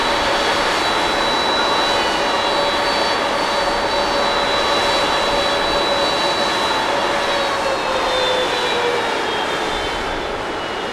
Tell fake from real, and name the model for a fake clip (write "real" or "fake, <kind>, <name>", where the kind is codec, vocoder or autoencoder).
real